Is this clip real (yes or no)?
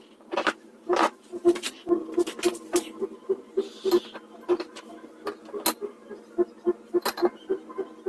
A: yes